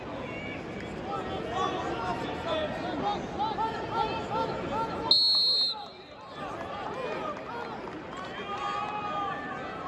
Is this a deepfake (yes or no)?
no